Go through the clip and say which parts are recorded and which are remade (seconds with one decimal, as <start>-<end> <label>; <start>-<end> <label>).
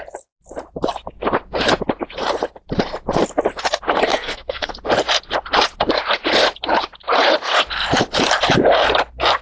0.0-4.1 recorded; 4.1-4.7 remade; 4.7-9.4 recorded